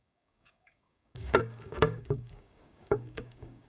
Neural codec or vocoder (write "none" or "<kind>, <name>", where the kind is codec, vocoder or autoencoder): codec, DAC